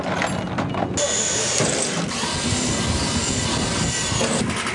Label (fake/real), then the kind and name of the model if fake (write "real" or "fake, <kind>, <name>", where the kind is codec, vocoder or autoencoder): real